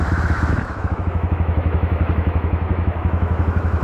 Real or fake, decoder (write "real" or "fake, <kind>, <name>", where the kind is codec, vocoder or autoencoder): fake, autoencoder, DAC-VAE